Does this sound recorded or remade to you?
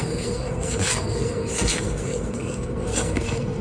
remade